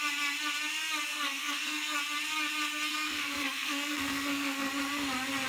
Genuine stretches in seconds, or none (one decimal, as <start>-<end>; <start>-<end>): 0.0-1.1; 2.0-2.9; 4.7-5.5